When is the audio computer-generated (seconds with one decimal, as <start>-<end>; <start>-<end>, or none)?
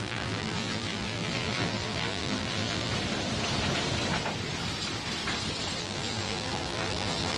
0.0-2.9; 5.8-7.4